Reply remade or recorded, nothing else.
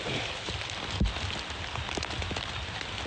recorded